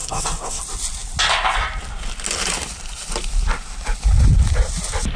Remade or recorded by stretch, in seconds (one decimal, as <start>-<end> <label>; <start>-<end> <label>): 0.0-0.6 remade; 0.6-5.2 recorded